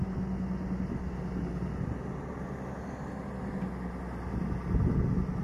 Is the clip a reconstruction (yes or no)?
no